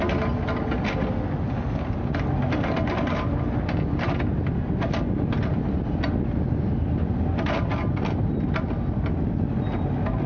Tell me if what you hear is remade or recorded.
recorded